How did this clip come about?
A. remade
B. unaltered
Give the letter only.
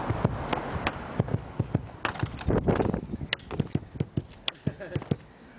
B